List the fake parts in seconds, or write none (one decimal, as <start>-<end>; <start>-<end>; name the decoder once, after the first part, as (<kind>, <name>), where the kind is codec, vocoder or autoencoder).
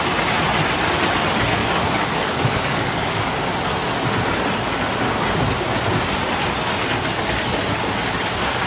1.6-3.4 (codec, DAC)